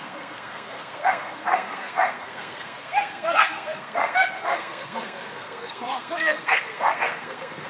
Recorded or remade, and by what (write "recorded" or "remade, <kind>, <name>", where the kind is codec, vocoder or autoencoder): remade, codec, SNAC